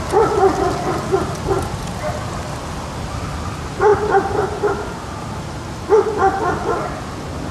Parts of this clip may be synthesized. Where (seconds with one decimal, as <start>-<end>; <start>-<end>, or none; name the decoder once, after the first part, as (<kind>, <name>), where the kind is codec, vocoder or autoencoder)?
none